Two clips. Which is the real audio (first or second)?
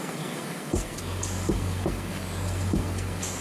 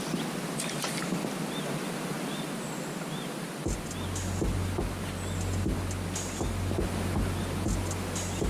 second